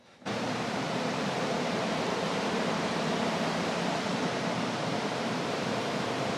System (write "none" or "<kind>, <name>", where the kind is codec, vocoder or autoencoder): vocoder, BigVGAN v2